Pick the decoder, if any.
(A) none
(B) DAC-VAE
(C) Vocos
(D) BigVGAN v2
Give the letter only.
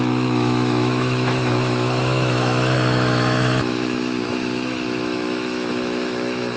B